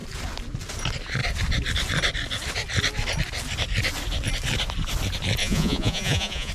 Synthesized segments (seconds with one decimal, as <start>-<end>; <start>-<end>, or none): 5.4-6.5